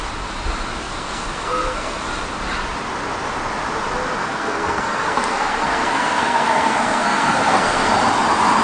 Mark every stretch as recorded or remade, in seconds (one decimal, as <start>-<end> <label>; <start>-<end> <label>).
0.0-0.8 recorded; 0.8-2.0 remade; 2.0-4.2 recorded; 4.2-7.9 remade; 7.9-8.6 recorded

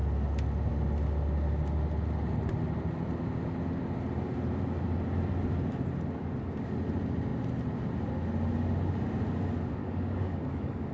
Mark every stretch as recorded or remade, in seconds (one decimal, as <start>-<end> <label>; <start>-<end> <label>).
0.0-9.8 recorded; 9.8-10.9 remade

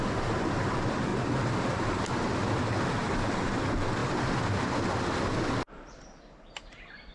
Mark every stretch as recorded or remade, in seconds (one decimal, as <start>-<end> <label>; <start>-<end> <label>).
0.0-1.1 recorded; 1.1-2.0 remade; 2.0-3.0 recorded; 3.0-3.5 remade; 3.5-7.1 recorded

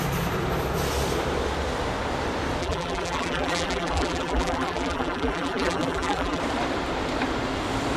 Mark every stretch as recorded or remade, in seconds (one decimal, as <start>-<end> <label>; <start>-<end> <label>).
0.0-2.6 recorded; 2.6-6.4 remade; 6.4-8.0 recorded

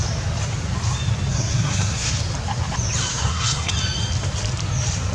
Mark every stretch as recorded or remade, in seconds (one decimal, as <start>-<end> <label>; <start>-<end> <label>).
0.0-1.3 recorded; 1.3-2.2 remade; 2.2-3.1 recorded; 3.1-3.7 remade; 3.7-5.1 recorded